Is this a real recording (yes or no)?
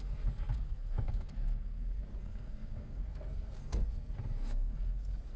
no